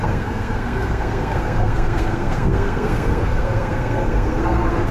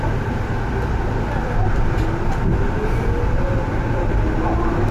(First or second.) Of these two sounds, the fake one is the first